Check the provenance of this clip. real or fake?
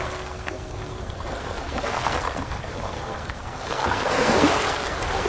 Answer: fake